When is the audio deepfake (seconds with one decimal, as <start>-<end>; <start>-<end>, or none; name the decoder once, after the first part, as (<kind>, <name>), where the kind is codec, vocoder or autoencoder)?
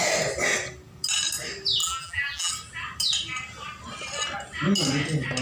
1.8-2.5 (vocoder, BigVGAN v2)